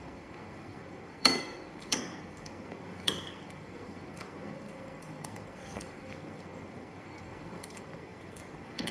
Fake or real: fake